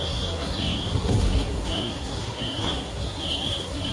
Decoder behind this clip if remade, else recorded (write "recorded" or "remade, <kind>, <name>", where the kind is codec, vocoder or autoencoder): remade, codec, SNAC